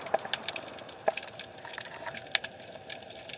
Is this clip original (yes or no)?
yes